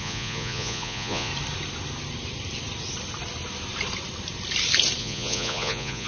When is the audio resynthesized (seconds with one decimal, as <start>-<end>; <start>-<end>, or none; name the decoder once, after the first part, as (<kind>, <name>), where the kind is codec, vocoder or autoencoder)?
0.0-1.3 (vocoder, Vocos); 5.0-6.1